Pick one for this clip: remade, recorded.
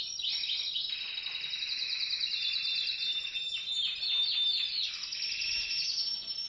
recorded